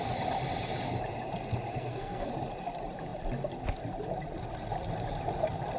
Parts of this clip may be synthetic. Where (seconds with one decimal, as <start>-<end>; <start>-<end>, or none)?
1.7-2.3